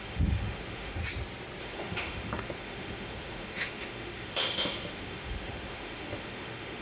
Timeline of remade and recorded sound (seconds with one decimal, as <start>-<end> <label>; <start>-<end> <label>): 0.0-1.0 remade; 1.0-1.6 recorded; 1.6-6.8 remade